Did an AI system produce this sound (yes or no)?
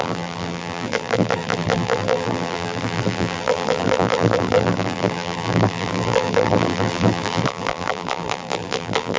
yes